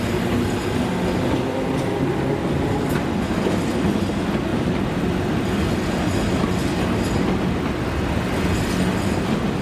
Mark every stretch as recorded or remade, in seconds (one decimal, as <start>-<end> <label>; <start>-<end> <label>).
0.0-9.6 recorded